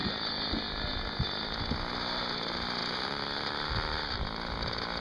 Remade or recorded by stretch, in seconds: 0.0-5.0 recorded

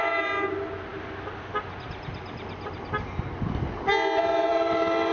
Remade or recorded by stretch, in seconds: 0.0-4.5 recorded; 4.5-5.1 remade

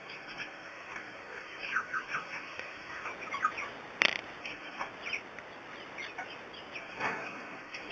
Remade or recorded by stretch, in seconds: 0.0-3.1 remade; 3.1-4.4 recorded; 4.4-4.9 remade; 4.9-6.8 recorded; 6.8-7.9 remade

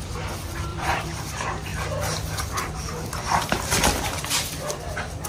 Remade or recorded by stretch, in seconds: 0.0-0.7 recorded; 0.7-1.2 remade; 1.2-5.3 recorded